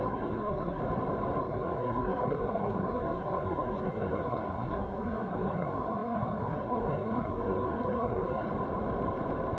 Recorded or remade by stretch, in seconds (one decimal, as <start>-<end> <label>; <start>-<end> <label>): 0.0-0.8 remade; 0.8-1.4 recorded; 1.4-8.5 remade; 8.5-9.6 recorded